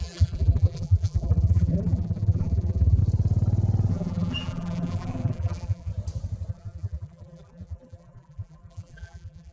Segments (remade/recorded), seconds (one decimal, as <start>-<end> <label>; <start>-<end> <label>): 0.0-3.0 remade; 3.0-3.9 recorded; 3.9-5.9 remade; 5.9-6.5 recorded; 6.5-9.5 remade